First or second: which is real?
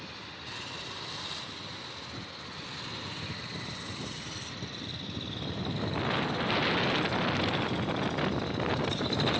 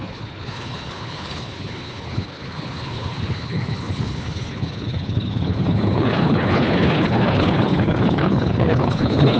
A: first